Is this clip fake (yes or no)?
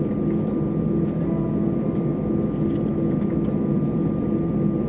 no